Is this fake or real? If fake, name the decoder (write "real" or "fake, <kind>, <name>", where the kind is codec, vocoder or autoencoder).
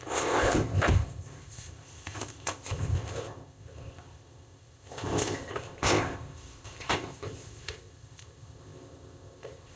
fake, codec, ZipCodec